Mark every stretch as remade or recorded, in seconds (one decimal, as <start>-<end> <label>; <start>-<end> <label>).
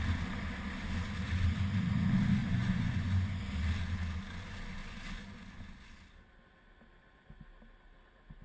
0.0-2.4 recorded; 2.4-3.4 remade; 3.4-4.8 recorded; 4.8-5.5 remade; 5.5-8.4 recorded